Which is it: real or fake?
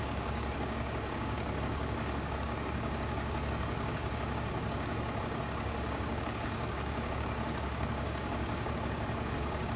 fake